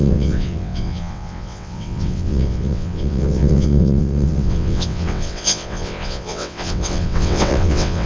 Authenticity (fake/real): fake